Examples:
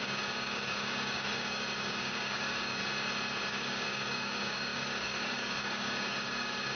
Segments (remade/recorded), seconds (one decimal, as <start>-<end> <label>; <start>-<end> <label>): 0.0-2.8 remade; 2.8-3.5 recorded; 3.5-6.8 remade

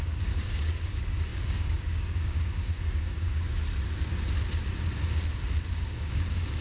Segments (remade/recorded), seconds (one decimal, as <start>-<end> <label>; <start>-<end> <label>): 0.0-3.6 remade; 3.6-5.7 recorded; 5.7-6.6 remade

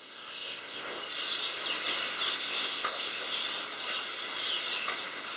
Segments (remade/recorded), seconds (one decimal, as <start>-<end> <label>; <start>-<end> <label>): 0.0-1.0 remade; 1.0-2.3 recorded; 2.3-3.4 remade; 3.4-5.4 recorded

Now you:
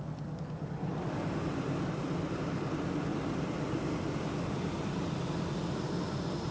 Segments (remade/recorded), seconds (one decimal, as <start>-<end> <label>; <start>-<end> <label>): 0.0-6.5 recorded

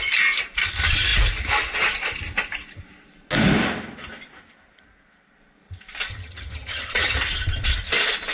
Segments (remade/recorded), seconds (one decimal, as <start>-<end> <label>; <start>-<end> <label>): 0.0-6.1 recorded; 6.1-7.2 remade; 7.2-8.3 recorded